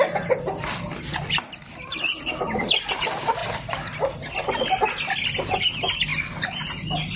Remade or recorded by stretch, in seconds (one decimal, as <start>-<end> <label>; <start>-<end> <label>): 0.0-7.2 recorded